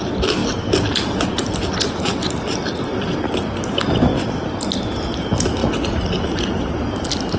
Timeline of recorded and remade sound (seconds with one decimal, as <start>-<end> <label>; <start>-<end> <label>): 0.0-5.6 recorded; 5.6-6.1 remade; 6.1-7.4 recorded